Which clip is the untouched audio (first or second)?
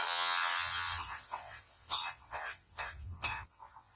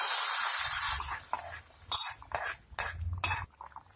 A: second